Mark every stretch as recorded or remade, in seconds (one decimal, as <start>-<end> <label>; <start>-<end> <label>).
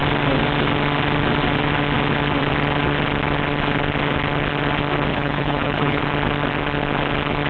0.0-5.1 recorded; 5.1-6.0 remade; 6.0-7.5 recorded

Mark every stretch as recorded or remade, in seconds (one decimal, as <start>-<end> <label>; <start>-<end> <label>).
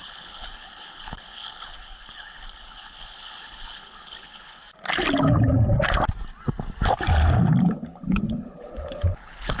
0.0-4.6 remade; 4.6-7.6 recorded; 7.6-9.6 remade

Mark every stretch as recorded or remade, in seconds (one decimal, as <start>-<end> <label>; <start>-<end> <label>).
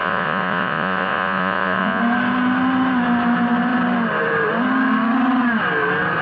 0.0-2.0 remade; 2.0-6.2 recorded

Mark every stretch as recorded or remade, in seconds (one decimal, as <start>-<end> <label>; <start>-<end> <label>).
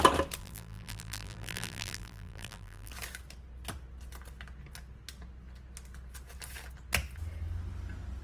0.0-0.4 recorded; 0.4-2.9 remade; 2.9-8.2 recorded